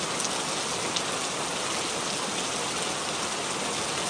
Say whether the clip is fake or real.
real